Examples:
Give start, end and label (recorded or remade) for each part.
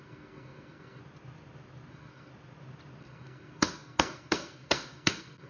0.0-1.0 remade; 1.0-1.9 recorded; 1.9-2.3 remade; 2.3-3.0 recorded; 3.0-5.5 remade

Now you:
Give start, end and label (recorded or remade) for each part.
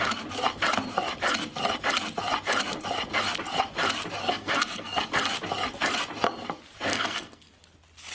0.0-4.2 recorded; 4.2-5.1 remade; 5.1-6.9 recorded; 6.9-7.5 remade; 7.5-8.1 recorded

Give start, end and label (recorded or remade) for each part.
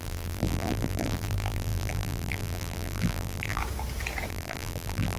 0.0-3.6 remade; 3.6-4.3 recorded; 4.3-5.2 remade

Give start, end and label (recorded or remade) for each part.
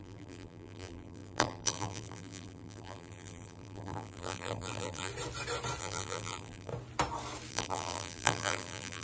0.0-5.1 remade; 5.1-5.8 recorded; 5.8-6.7 remade; 6.7-7.5 recorded; 7.5-9.0 remade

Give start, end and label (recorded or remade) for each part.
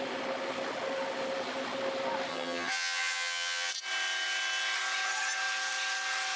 0.0-2.3 recorded; 2.3-3.7 remade; 3.7-6.4 recorded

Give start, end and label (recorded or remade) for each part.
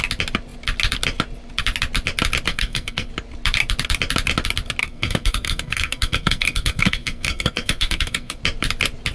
0.0-2.5 recorded; 2.5-3.1 remade; 3.1-4.8 recorded; 4.8-8.4 remade; 8.4-9.1 recorded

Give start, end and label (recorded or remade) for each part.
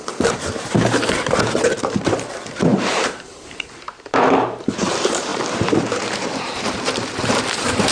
0.0-7.9 remade